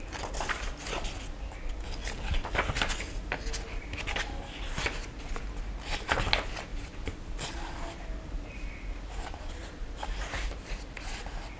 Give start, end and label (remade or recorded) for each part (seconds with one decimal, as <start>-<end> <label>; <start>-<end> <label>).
0.0-6.7 recorded; 6.7-7.7 remade; 7.7-11.6 recorded